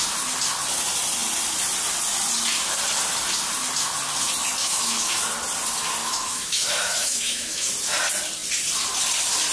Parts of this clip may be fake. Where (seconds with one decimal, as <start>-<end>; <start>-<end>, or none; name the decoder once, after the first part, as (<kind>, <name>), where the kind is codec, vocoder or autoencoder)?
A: 4.6-5.2 (autoencoder, DAC-VAE); 6.0-7.7